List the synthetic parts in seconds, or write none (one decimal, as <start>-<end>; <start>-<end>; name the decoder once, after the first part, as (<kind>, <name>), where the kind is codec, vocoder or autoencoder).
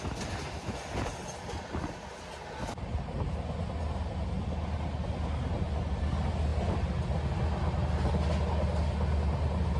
none